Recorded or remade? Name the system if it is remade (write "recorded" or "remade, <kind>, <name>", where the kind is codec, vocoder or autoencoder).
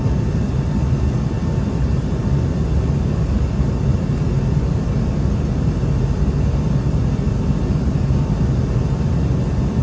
recorded